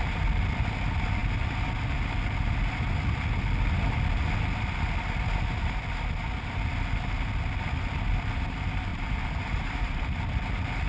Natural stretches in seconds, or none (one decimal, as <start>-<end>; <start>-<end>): 0.0-8.9; 10.3-10.9